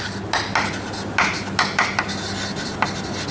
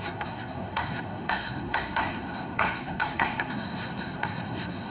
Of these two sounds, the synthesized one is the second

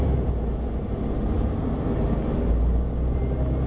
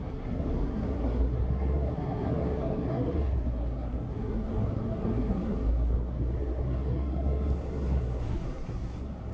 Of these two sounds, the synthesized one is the second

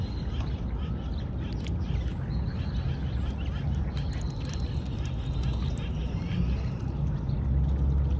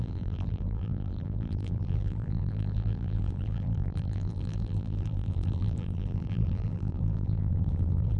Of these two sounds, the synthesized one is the second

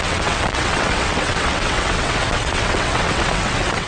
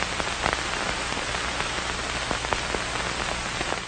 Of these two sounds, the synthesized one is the first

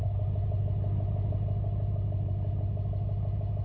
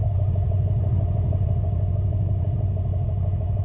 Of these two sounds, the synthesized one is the second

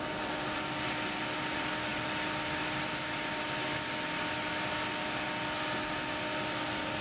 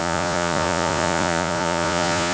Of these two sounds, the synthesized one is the second